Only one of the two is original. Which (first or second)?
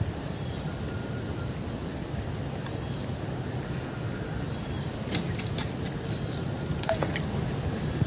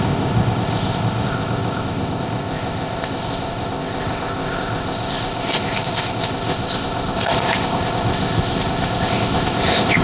first